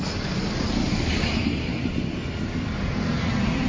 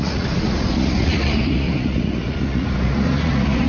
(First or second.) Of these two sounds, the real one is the first